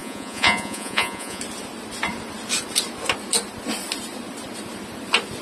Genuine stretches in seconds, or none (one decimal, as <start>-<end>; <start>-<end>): 1.4-5.4